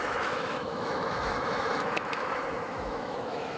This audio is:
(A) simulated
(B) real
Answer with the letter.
A